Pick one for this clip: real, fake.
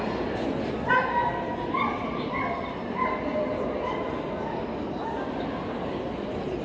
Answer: real